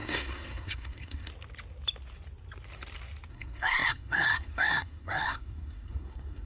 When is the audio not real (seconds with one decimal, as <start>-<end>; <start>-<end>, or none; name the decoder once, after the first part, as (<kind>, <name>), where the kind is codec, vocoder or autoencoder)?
0.0-1.3 (codec, SNAC); 3.3-6.5